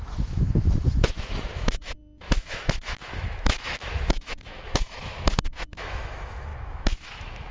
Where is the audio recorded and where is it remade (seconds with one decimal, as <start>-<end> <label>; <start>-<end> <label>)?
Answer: 0.0-7.5 remade